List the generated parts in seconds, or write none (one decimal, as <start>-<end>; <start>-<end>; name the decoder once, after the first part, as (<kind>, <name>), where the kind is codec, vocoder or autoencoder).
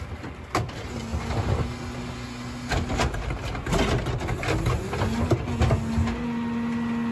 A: none